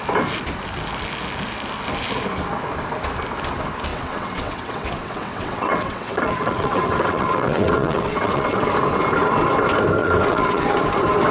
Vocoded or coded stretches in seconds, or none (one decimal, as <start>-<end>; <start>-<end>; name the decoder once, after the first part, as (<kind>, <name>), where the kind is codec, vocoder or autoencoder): 3.9-8.7 (vocoder, WaveNeXt); 10.0-10.8